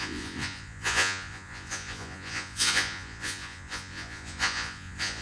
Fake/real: fake